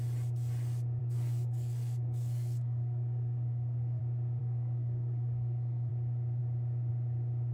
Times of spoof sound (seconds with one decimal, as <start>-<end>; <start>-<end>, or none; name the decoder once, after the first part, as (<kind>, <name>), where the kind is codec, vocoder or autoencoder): 1.0-4.0 (codec, SNAC); 4.4-5.9